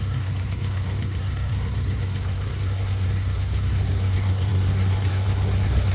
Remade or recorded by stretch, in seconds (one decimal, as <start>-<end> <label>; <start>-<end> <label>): 0.0-5.9 remade